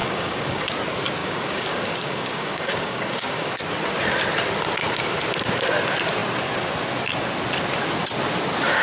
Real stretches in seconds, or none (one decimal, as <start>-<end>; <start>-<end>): 0.7-1.2; 3.5-8.8